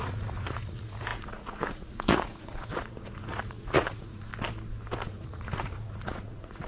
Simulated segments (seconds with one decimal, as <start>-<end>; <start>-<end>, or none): 0.0-4.3; 5.0-6.7